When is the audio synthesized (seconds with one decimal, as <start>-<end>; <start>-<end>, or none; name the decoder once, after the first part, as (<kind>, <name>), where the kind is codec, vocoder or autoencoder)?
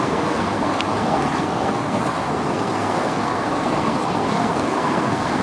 0.0-5.4 (codec, SNAC)